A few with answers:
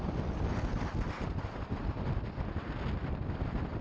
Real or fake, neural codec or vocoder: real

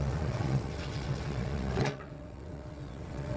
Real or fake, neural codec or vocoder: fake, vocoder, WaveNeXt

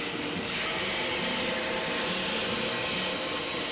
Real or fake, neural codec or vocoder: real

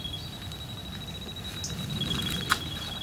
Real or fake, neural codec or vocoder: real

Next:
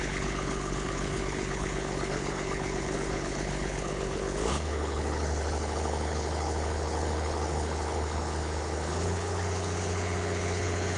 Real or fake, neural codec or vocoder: fake, codec, HILCodec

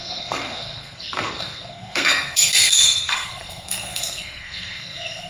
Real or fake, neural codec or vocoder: fake, codec, SNAC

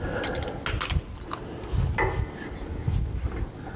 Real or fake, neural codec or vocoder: real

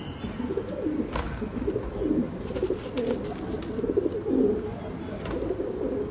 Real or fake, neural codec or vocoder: real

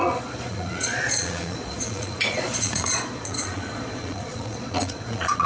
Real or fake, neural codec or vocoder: fake, vocoder, Vocos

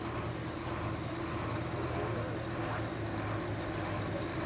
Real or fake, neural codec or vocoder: real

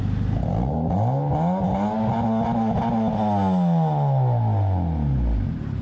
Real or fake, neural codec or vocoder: real